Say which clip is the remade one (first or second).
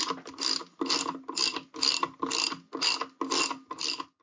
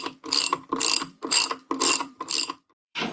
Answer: second